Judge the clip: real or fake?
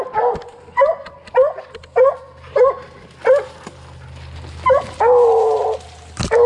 real